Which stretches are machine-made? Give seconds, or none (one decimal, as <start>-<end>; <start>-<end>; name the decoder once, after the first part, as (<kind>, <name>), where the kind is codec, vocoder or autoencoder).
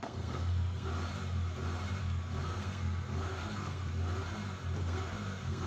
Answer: 0.0-0.9 (codec, SNAC); 2.0-3.9; 4.8-5.7